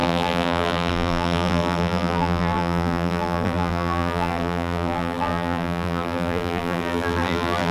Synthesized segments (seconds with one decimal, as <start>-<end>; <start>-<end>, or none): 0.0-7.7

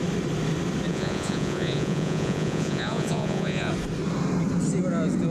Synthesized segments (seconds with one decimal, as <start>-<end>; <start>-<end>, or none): 0.9-3.7

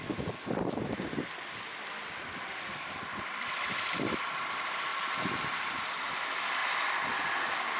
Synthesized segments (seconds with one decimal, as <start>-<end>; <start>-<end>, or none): 0.0-4.9; 5.4-6.6

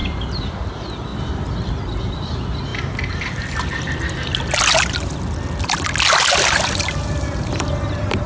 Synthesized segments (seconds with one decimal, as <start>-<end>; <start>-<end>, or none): 0.0-0.5

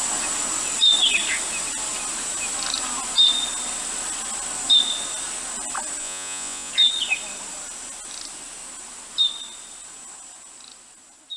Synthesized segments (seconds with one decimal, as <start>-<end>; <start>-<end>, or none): 6.0-6.7

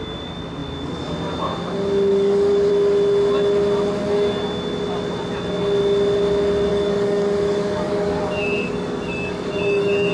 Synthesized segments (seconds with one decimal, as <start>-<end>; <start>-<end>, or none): 2.1-2.7; 6.7-10.1